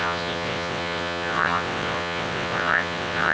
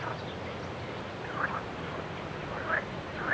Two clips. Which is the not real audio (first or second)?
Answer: first